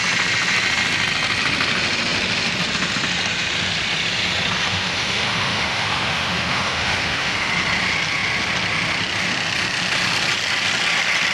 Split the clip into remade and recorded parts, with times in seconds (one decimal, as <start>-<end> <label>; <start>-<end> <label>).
0.0-4.7 recorded; 4.7-7.5 remade; 7.5-11.3 recorded